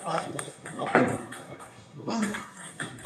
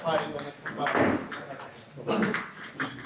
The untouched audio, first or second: second